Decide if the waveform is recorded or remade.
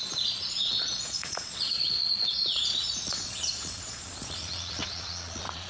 remade